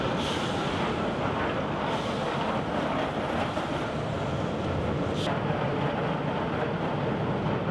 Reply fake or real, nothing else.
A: real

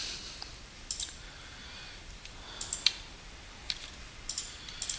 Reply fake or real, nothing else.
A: real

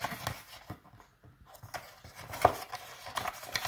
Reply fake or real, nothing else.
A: real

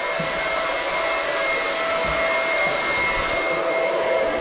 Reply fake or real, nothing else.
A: real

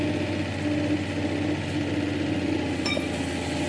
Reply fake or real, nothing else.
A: real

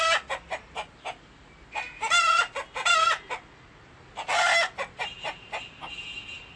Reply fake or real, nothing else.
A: real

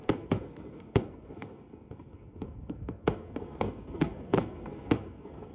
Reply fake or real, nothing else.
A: fake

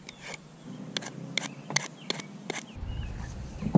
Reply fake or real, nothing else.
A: real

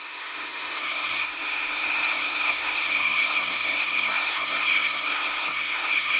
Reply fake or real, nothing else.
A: fake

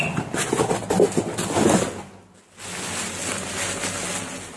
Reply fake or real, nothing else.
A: real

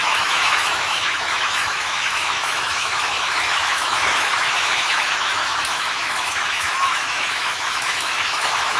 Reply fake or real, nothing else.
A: fake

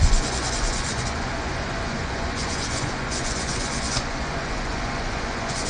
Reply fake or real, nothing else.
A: fake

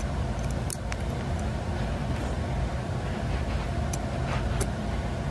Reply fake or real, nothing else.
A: real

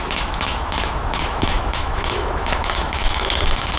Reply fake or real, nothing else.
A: fake